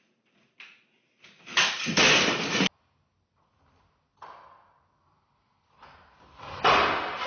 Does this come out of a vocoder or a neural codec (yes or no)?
no